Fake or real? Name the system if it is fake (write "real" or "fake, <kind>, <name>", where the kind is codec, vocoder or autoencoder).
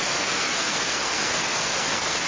fake, codec, SNAC